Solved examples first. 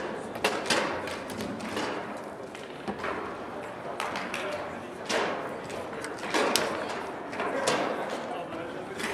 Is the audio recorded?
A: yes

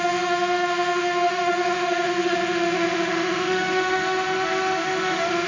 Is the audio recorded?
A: no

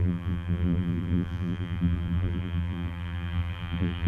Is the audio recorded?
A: no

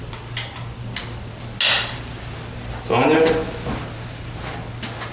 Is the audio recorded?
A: yes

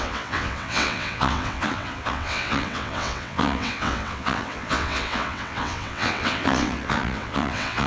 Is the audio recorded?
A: no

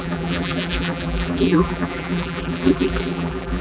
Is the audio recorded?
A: no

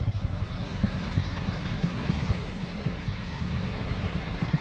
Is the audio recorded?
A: no